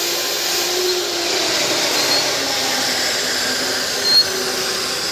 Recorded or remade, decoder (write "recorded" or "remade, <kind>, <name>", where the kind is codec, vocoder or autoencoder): recorded